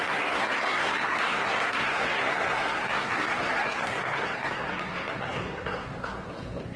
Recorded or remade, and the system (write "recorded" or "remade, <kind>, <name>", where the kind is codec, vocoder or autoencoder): remade, codec, SNAC